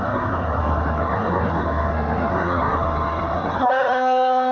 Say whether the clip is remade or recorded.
remade